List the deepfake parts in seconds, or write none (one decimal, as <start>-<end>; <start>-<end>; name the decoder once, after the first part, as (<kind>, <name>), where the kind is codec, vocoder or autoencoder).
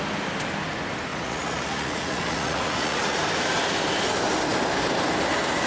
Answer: 1.1-3.2 (vocoder, Vocos)